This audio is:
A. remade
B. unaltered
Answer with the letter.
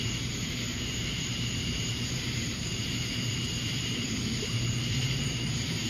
A